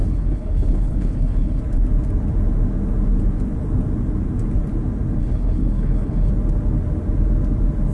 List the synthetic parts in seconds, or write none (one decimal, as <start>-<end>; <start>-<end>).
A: 0.0-1.6; 5.2-6.3